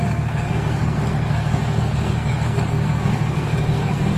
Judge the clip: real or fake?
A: fake